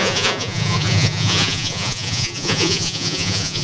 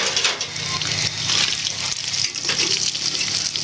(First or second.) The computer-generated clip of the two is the first